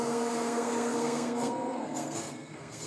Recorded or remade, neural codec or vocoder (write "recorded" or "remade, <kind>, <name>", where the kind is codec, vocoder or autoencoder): remade, codec, SNAC